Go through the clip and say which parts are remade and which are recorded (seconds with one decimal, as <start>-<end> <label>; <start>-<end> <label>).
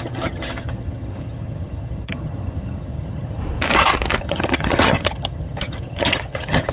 0.0-3.4 remade; 3.4-4.2 recorded; 4.2-6.7 remade